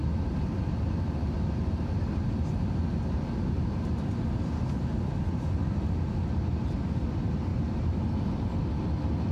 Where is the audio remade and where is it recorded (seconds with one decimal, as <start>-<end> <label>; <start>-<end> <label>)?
0.0-9.3 recorded